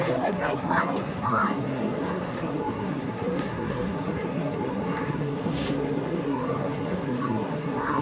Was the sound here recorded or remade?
remade